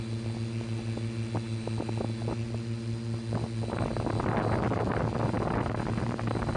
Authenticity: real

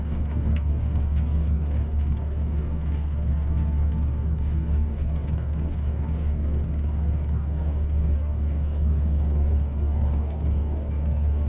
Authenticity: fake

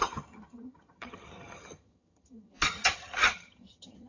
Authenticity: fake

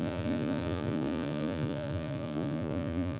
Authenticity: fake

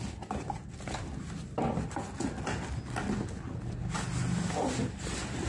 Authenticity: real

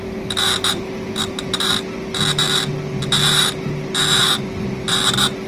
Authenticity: real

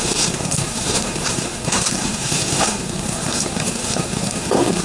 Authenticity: fake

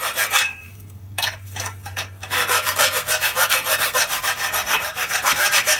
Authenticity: fake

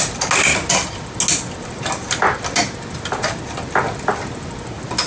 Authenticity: real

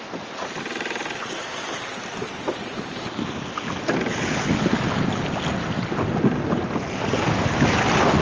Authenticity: real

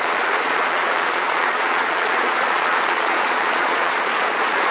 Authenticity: fake